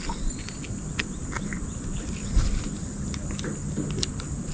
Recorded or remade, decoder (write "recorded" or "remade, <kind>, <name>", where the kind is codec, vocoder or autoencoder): recorded